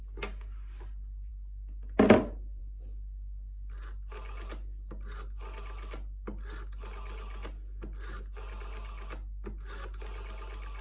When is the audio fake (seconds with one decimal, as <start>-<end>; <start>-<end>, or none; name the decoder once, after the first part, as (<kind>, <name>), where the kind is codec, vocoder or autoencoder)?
none